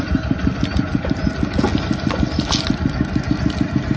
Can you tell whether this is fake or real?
real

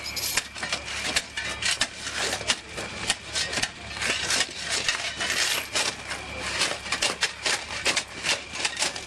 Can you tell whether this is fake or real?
real